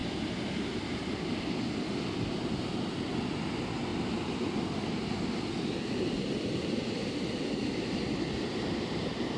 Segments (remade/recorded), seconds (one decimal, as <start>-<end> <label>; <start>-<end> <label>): 0.0-3.9 recorded; 3.9-8.9 remade; 8.9-9.4 recorded